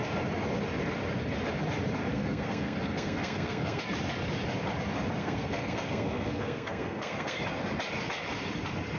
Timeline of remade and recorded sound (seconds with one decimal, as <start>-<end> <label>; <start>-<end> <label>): 0.0-2.1 recorded; 2.1-3.8 remade; 3.8-5.2 recorded; 5.2-7.4 remade; 7.4-9.0 recorded